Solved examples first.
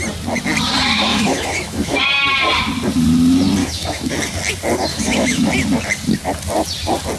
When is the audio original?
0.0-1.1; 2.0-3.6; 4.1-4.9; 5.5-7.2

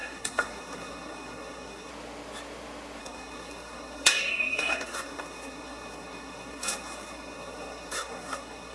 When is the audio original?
1.9-3.0

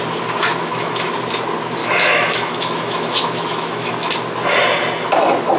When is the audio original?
0.0-0.5; 1.1-1.8; 3.9-5.6

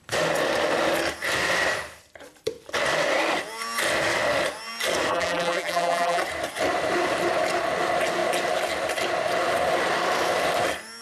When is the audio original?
0.0-5.1; 6.2-11.0

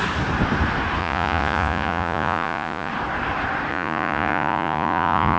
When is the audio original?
0.0-1.0; 2.9-3.7

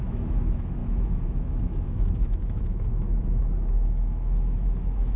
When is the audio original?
none